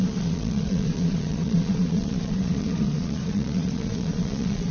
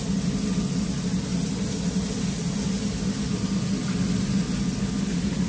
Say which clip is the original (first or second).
second